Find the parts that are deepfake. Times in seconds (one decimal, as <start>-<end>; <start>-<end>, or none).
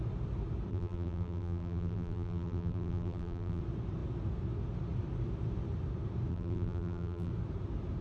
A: 0.7-3.6; 6.3-7.3